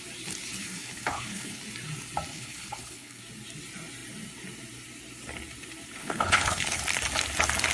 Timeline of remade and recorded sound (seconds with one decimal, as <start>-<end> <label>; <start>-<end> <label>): 0.0-0.6 recorded; 0.6-1.6 remade; 1.6-2.3 recorded; 2.3-3.2 remade; 3.2-6.0 recorded; 6.0-6.8 remade; 6.8-7.7 recorded